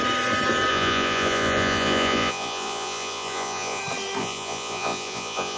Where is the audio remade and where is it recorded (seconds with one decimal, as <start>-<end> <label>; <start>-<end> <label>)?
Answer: 0.0-0.7 recorded; 0.7-3.8 remade; 3.8-4.2 recorded; 4.2-5.6 remade